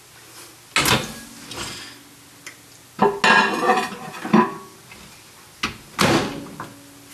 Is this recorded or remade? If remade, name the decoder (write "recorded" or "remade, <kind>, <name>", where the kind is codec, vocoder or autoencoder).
recorded